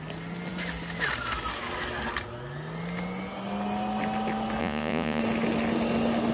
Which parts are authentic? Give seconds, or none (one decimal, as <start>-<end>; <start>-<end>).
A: 0.0-4.6; 5.2-6.3